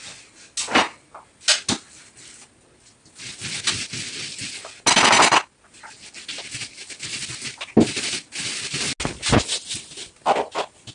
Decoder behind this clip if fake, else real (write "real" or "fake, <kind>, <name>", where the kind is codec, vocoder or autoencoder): real